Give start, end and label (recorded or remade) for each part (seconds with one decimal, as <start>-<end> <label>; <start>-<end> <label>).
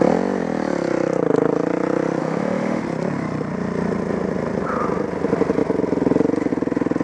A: 0.0-2.2 recorded; 2.2-2.8 remade; 2.8-7.0 recorded